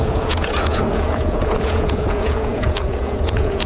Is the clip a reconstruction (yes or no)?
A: yes